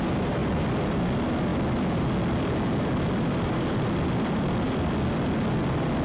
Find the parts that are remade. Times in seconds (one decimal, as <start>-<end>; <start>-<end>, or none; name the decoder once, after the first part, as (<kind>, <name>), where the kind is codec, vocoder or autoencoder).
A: none